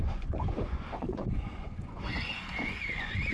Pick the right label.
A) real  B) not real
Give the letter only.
B